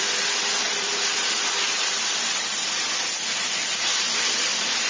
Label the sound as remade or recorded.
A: recorded